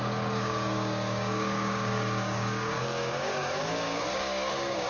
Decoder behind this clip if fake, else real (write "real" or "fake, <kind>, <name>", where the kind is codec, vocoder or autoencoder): fake, codec, DAC